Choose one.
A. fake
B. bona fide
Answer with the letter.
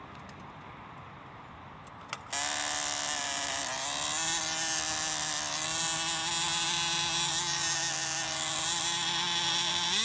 B